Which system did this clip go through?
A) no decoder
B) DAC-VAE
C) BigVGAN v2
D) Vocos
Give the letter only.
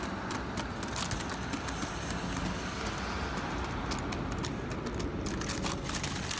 A